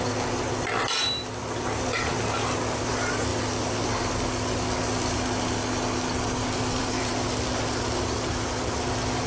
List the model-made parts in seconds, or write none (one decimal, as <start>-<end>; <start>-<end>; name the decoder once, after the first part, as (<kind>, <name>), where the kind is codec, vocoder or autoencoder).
0.0-2.1 (vocoder, BigVGAN v2); 2.9-3.3; 3.9-5.6; 6.6-9.3